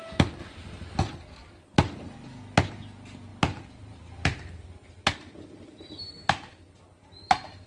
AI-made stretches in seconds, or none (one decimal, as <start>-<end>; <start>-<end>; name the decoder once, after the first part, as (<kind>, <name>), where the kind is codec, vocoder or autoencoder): 3.3-6.6 (vocoder, BigVGAN v2)